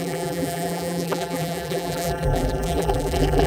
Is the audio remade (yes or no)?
yes